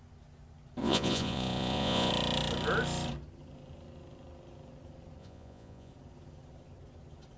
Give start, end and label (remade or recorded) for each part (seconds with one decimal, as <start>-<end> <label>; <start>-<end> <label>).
0.0-0.8 recorded; 0.8-2.1 remade; 2.1-5.2 recorded; 5.2-5.9 remade; 5.9-7.4 recorded